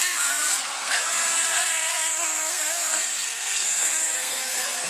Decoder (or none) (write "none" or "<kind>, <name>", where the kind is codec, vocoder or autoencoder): codec, SNAC